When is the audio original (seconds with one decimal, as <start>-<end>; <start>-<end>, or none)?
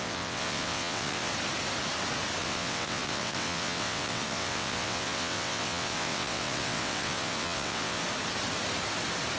1.3-2.4; 8.0-9.4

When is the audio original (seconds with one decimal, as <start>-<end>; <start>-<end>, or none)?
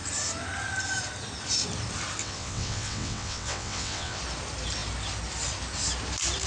0.0-2.2; 4.2-6.5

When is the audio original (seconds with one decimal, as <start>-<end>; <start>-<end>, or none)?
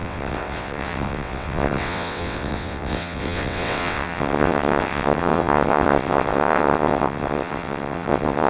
none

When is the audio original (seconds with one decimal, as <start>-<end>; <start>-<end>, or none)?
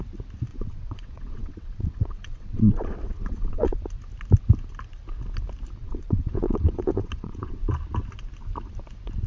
0.0-0.5; 3.8-5.8; 7.6-9.3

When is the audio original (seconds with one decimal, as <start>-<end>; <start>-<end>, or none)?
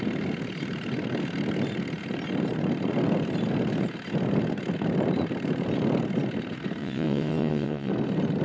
0.0-6.8; 7.9-8.4